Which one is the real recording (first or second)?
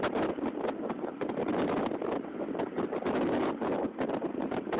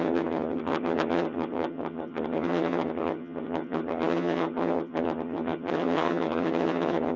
first